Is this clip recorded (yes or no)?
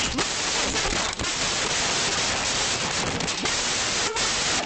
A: yes